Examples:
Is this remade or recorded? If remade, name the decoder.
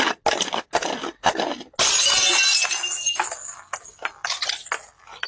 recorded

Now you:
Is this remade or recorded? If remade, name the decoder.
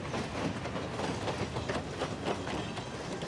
recorded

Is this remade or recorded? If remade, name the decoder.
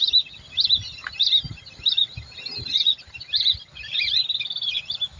recorded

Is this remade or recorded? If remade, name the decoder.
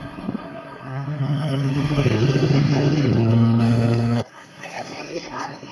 remade, codec, SNAC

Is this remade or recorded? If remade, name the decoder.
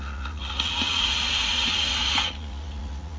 remade, vocoder, Vocos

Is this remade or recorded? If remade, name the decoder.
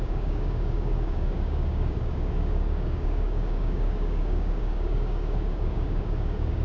remade, codec, DAC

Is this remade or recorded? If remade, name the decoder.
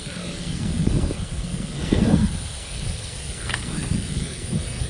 remade, codec, SNAC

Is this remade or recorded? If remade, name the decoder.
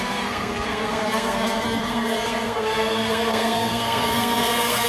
remade, codec, SNAC